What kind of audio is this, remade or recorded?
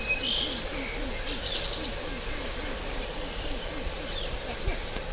recorded